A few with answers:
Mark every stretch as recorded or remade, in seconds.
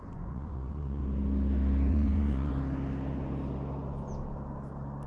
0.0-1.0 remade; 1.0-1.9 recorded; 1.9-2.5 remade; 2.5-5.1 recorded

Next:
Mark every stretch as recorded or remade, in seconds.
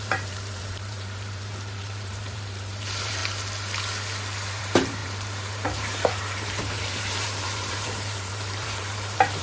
0.0-3.2 remade; 3.2-4.5 recorded; 4.5-9.4 remade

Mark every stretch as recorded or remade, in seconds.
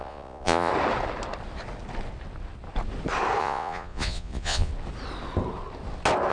0.0-0.7 remade; 0.7-3.4 recorded; 3.4-4.7 remade; 4.7-6.3 recorded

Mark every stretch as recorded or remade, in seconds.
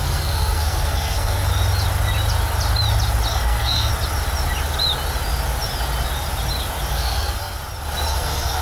0.0-1.5 remade; 1.5-3.3 recorded; 3.3-3.9 remade; 3.9-6.9 recorded; 6.9-7.6 remade; 7.6-8.1 recorded; 8.1-8.6 remade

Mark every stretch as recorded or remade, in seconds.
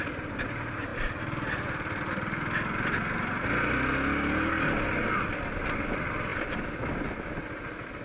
0.0-8.0 recorded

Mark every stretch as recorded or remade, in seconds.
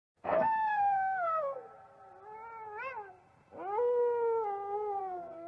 0.0-1.7 remade; 1.7-5.0 recorded; 5.0-5.5 remade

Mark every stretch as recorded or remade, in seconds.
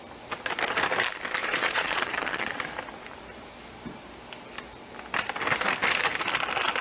0.0-1.4 recorded; 1.4-2.6 remade; 2.6-6.8 recorded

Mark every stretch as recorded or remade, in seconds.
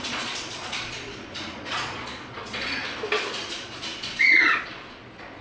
0.0-2.8 remade; 2.8-3.5 recorded; 3.5-5.4 remade